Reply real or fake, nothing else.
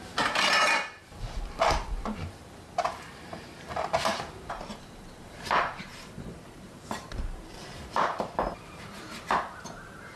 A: fake